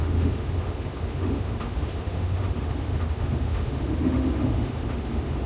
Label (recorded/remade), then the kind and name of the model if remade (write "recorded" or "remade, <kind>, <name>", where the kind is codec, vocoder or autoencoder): remade, autoencoder, DAC-VAE